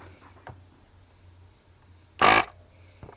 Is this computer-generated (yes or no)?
no